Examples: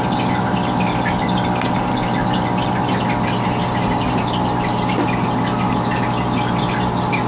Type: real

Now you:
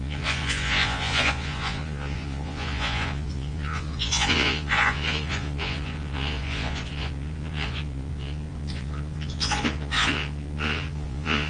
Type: fake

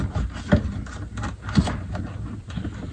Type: real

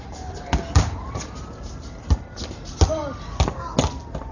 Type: real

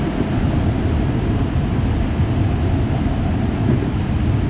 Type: real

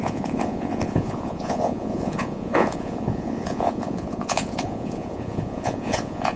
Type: fake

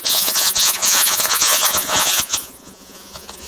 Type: fake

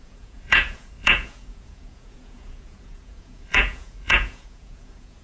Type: fake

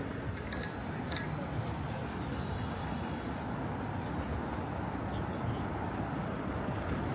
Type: real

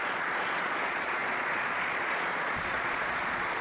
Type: fake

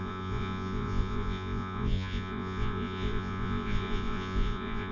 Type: fake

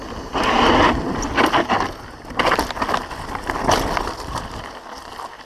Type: real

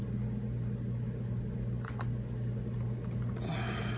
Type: real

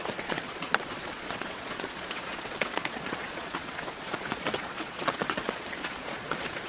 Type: fake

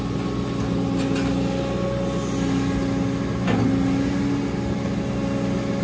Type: real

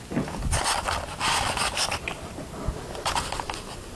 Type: real